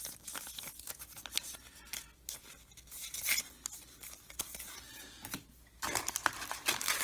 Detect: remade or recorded recorded